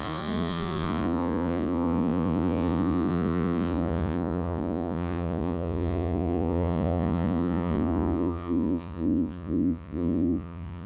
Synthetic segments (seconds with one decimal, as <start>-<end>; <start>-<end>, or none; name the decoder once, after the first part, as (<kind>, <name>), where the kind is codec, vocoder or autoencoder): 0.0-10.9 (vocoder, Vocos)